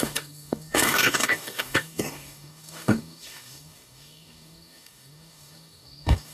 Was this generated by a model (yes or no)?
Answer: yes